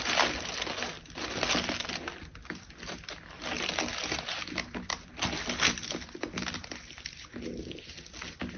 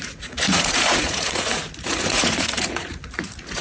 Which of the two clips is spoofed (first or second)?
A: second